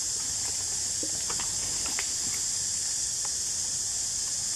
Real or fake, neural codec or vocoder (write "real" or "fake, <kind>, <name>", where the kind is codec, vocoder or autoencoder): real